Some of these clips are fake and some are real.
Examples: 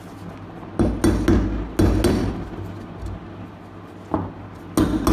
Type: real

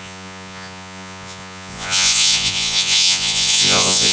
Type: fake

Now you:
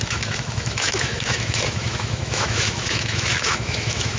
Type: fake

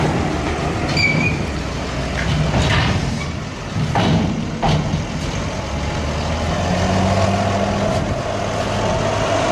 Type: real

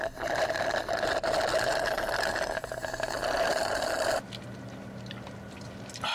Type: real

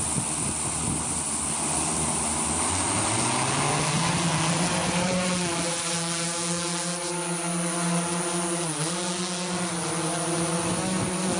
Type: real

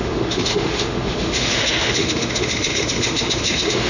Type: fake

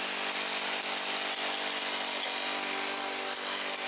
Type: real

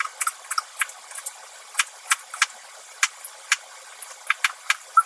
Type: real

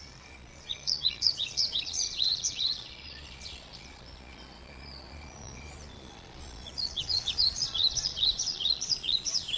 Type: fake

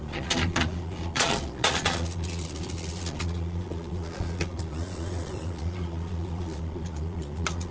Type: fake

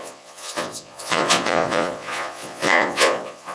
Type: fake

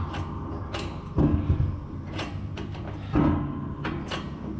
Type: real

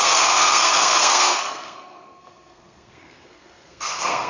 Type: fake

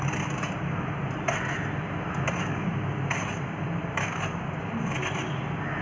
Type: real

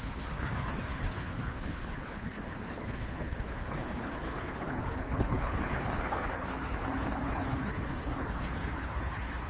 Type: fake